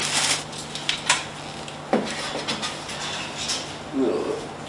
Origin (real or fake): real